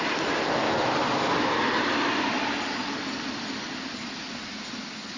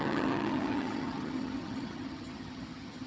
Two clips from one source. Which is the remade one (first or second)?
second